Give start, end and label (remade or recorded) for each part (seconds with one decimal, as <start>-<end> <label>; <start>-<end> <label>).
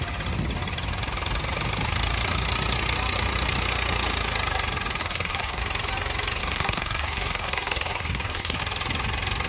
0.0-5.0 recorded; 5.0-5.6 remade; 5.6-6.4 recorded; 6.4-8.6 remade; 8.6-9.5 recorded